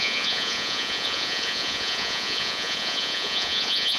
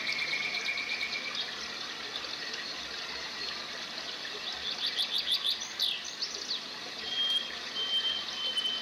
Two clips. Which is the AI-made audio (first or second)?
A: first